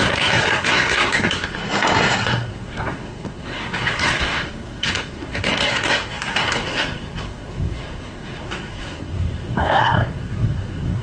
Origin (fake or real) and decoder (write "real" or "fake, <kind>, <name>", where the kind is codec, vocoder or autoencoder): fake, codec, SNAC